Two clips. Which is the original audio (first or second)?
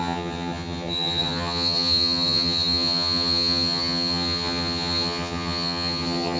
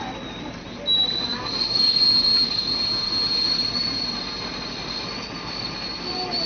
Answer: second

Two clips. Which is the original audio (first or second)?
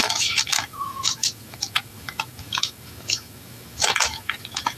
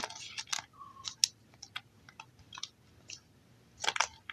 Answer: second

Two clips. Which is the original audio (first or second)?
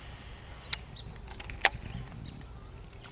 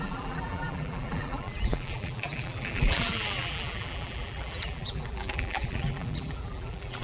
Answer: first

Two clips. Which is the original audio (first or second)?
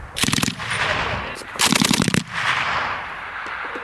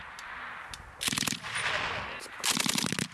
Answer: second